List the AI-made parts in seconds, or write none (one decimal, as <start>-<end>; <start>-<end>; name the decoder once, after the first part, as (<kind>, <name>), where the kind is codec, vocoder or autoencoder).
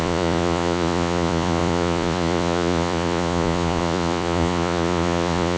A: 0.0-5.6 (vocoder, Vocos)